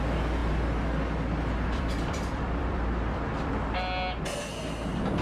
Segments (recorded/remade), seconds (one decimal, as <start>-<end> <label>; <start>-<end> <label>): 0.0-0.4 recorded; 0.4-3.5 remade; 3.5-5.2 recorded